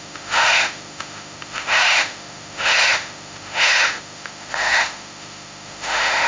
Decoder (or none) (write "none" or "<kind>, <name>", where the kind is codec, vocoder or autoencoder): autoencoder, DAC-VAE